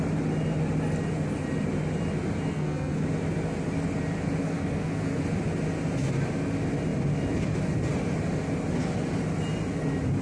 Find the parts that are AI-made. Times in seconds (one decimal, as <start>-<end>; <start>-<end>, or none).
2.5-3.0; 4.4-5.2